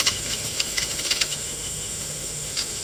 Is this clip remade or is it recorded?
remade